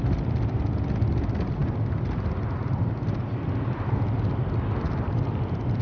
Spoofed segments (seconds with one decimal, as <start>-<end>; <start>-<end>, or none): none